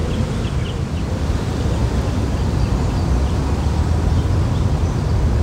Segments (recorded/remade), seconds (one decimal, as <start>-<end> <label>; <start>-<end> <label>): 0.0-5.4 recorded